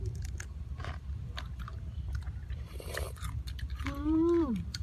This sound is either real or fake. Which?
fake